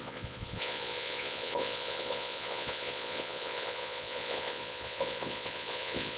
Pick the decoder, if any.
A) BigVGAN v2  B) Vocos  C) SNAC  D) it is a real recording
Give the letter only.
B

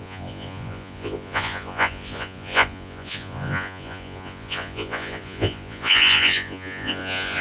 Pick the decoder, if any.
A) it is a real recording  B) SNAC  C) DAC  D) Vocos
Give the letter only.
D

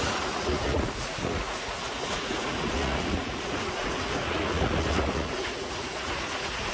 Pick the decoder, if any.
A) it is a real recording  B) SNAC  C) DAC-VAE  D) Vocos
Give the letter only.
D